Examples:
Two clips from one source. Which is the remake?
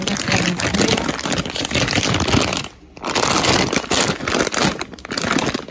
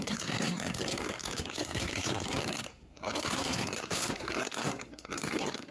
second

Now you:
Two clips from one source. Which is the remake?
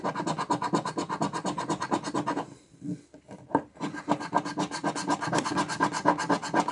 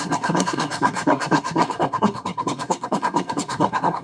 second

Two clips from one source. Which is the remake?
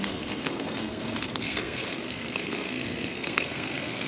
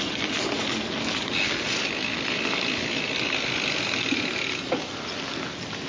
first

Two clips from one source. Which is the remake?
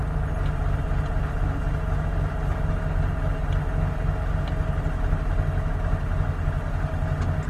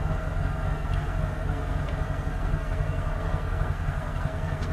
second